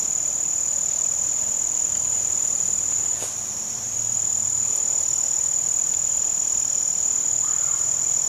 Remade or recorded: recorded